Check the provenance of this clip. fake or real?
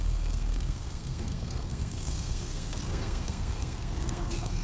fake